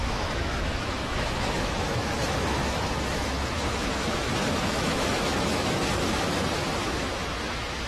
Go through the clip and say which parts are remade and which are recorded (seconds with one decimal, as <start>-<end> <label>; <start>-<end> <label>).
0.0-7.9 remade